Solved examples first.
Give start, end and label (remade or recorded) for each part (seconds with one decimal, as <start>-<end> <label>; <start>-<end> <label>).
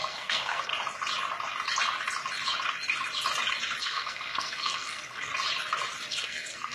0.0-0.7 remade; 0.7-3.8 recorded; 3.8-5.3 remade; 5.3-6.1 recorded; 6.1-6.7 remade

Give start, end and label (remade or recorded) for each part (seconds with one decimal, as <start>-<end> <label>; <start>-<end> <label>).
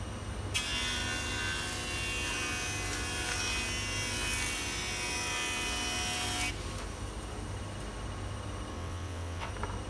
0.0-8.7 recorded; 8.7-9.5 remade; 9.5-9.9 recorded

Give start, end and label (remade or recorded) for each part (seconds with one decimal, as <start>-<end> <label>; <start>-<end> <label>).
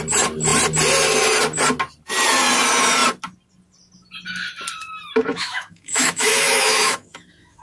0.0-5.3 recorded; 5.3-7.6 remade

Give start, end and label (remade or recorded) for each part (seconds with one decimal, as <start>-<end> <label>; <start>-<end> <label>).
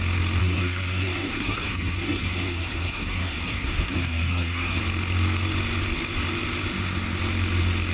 0.0-0.4 recorded; 0.4-4.8 remade; 4.8-7.9 recorded